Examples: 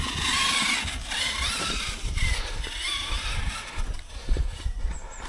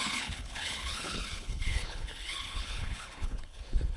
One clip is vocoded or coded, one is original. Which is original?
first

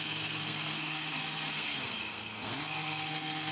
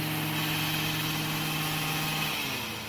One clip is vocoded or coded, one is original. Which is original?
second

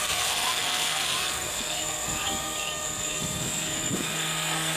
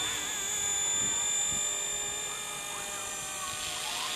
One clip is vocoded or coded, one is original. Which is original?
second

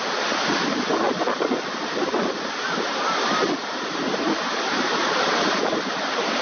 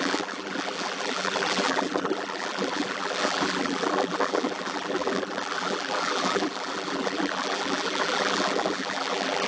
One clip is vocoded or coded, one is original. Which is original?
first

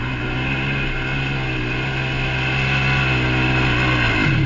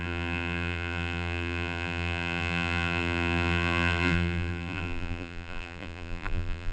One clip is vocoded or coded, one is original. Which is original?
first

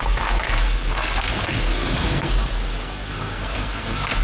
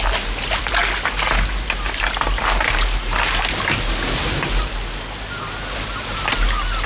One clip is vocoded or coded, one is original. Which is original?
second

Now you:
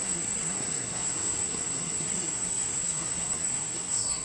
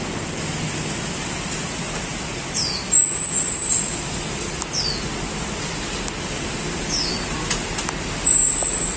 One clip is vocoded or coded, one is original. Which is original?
second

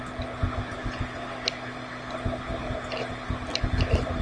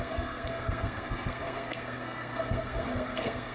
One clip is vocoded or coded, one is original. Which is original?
first